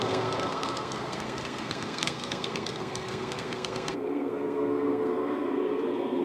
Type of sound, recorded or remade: remade